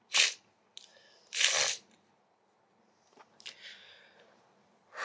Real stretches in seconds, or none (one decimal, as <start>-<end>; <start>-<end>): 0.0-5.0